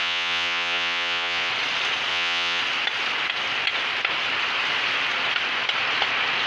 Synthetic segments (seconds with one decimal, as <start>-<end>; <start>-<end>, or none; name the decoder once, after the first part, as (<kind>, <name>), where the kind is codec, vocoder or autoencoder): 0.0-1.5 (vocoder, Vocos); 2.1-2.6